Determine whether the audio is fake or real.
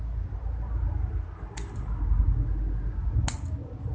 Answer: real